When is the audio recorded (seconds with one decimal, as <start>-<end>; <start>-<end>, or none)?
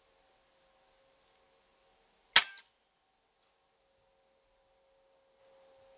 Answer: 0.0-6.0